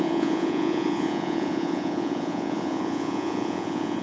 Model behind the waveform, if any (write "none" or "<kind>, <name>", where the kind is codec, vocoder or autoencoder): vocoder, Vocos